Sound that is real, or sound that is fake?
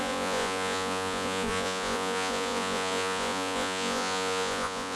fake